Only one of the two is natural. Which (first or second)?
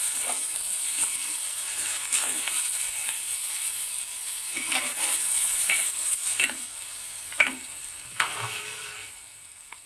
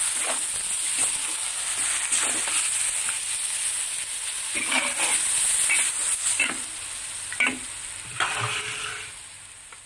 second